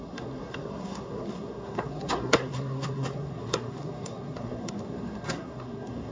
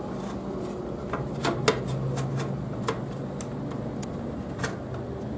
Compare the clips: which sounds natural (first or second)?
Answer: second